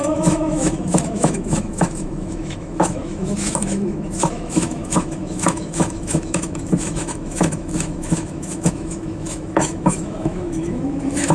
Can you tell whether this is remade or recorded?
remade